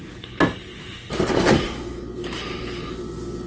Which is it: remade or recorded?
recorded